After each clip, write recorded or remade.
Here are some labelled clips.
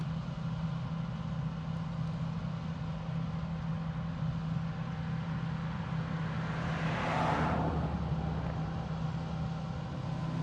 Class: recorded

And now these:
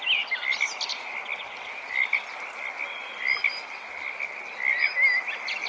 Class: recorded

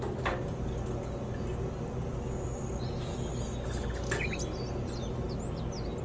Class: recorded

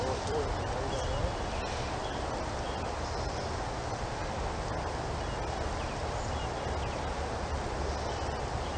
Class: recorded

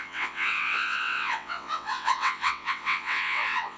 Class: remade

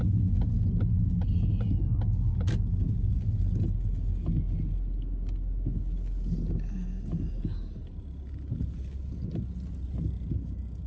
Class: recorded